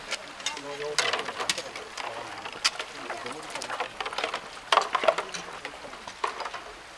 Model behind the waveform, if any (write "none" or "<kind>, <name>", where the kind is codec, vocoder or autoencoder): none